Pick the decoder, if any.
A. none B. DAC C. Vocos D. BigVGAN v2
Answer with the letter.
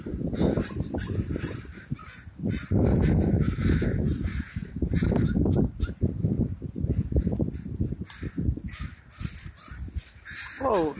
A